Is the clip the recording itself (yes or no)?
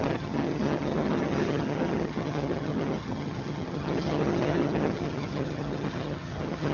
no